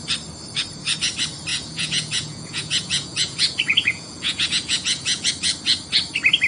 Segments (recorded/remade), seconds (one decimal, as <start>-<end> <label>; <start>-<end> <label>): 0.0-1.5 recorded; 1.5-5.3 remade; 5.3-6.5 recorded